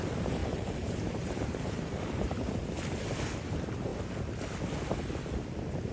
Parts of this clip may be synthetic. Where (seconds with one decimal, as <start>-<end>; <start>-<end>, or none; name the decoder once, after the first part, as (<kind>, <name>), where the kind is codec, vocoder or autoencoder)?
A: 0.4-2.5 (vocoder, BigVGAN v2)